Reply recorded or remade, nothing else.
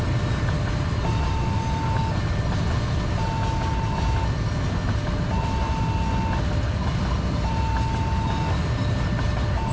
recorded